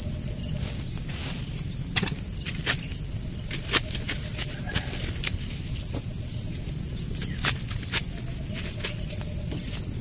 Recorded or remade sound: recorded